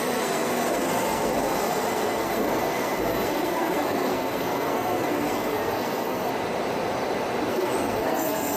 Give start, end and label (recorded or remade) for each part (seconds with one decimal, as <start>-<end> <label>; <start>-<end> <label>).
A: 0.0-6.3 remade; 6.3-7.5 recorded; 7.5-8.6 remade